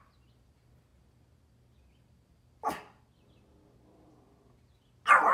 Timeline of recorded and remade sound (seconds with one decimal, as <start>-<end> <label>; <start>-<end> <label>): 0.0-5.3 recorded